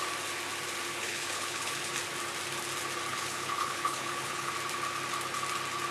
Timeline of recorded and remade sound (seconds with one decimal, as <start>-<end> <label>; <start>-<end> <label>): 0.0-1.0 recorded; 1.0-1.9 remade; 1.9-3.1 recorded; 3.1-4.5 remade; 4.5-5.9 recorded

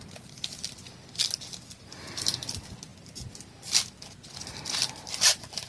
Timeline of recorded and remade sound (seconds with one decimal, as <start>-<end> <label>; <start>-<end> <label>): 0.0-5.7 recorded

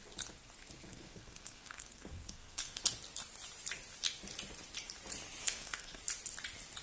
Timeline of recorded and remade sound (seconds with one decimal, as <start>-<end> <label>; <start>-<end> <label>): 0.0-0.9 recorded; 0.9-2.8 remade; 2.8-5.4 recorded; 5.4-6.0 remade; 6.0-6.8 recorded

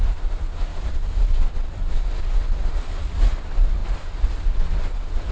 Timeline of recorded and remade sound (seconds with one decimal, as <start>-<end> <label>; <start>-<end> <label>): 0.0-5.3 recorded

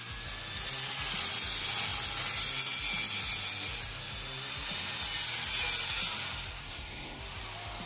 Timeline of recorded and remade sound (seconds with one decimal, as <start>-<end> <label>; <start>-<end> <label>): 0.0-6.6 recorded; 6.6-7.2 remade; 7.2-7.9 recorded

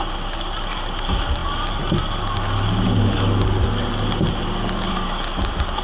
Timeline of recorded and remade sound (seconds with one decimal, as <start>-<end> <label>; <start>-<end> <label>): 0.0-5.8 recorded

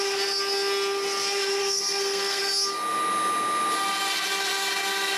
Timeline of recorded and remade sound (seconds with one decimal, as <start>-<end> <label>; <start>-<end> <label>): 0.0-1.6 recorded; 1.6-2.4 remade; 2.4-5.2 recorded

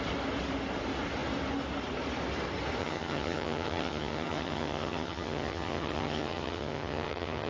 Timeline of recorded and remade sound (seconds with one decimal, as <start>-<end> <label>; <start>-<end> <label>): 0.0-2.8 recorded; 2.8-7.5 remade